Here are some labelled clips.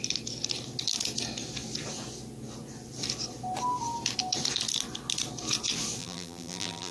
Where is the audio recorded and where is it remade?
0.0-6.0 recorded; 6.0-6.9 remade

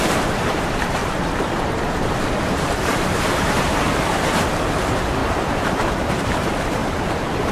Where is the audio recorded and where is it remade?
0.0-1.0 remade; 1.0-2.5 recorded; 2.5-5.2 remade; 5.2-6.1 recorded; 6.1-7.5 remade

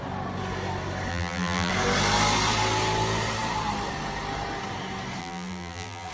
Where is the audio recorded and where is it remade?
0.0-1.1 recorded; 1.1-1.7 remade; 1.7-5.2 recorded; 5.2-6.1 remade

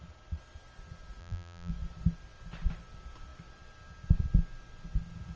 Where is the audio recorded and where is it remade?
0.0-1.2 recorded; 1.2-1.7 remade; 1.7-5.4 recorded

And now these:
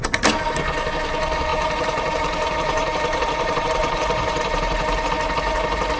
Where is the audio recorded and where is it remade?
0.0-1.5 recorded; 1.5-5.1 remade; 5.1-6.0 recorded